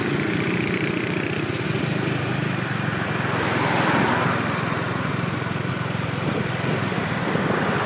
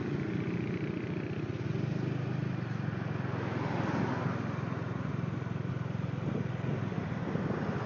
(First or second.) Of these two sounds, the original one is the second